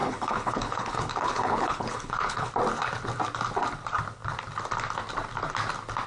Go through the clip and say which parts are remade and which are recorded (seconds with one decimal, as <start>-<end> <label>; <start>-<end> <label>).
0.0-2.5 remade; 2.5-6.1 recorded